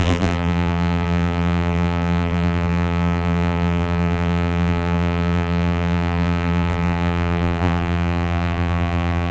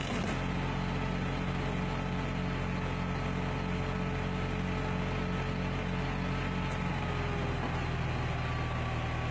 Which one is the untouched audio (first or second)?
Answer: second